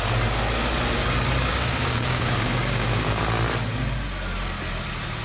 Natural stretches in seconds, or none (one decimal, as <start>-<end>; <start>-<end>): 0.0-1.5; 3.2-5.2